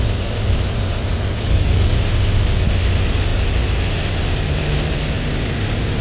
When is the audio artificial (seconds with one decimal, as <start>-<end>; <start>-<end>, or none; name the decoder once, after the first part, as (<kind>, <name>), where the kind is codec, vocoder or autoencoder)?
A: 1.1-1.9 (codec, DAC)